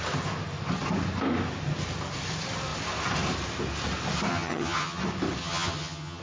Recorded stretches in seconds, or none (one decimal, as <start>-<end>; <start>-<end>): 0.0-4.3; 5.0-5.4